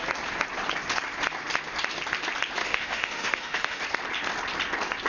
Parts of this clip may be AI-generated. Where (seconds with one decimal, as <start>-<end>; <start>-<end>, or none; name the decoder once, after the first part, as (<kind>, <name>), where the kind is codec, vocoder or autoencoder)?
2.6-3.8 (autoencoder, DAC-VAE)